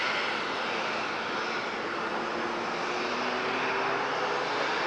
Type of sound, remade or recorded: recorded